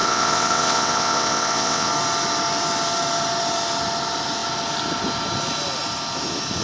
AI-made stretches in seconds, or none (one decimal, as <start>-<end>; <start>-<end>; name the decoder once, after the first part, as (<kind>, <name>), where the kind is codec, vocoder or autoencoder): 0.0-1.9 (vocoder, WaveNeXt)